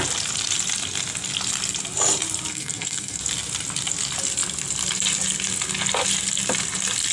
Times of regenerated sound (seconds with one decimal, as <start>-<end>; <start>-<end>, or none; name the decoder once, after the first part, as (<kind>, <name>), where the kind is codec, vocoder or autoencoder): 2.5-3.2 (codec, SNAC)